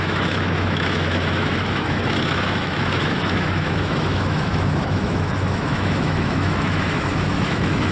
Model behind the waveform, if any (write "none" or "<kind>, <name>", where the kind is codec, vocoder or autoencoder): autoencoder, DAC-VAE